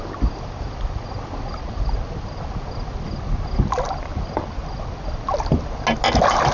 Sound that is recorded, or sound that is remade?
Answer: recorded